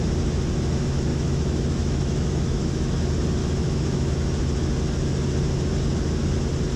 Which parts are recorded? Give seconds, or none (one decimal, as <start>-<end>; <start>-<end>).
0.0-1.1; 3.0-3.4; 4.1-6.8